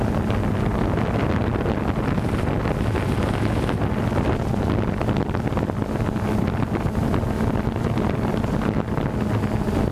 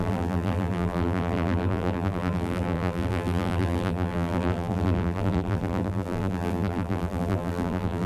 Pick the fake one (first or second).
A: second